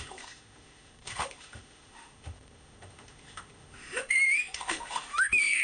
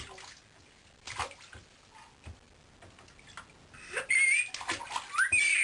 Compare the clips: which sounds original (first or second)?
second